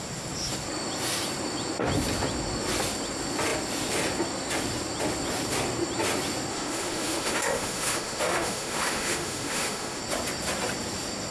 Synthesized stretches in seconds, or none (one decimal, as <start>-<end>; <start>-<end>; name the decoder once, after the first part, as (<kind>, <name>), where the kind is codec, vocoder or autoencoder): 6.5-10.0 (autoencoder, DAC-VAE)